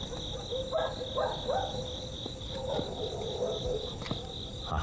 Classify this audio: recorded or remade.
recorded